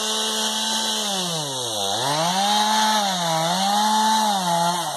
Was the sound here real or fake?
real